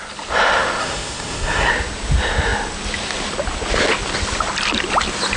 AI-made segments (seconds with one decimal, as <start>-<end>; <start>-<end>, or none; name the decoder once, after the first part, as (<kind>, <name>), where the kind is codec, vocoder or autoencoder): 0.8-1.7 (codec, SNAC)